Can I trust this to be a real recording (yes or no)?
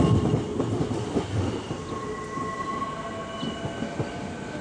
yes